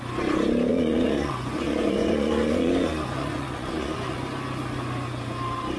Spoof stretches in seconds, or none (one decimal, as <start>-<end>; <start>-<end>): 0.7-4.2